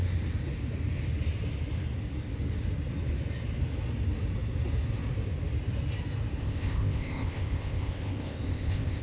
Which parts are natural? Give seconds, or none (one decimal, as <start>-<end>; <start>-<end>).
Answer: 0.0-6.4